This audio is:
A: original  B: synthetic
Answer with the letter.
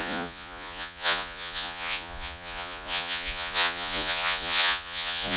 B